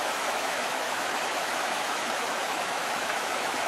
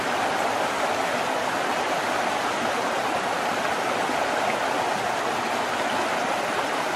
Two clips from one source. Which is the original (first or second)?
second